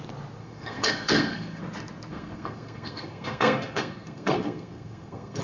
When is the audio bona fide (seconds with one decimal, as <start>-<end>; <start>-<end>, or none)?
0.0-0.4; 1.6-2.1